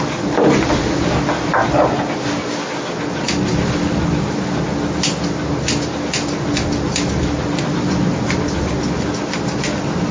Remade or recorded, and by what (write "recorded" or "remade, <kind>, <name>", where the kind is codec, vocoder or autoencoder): recorded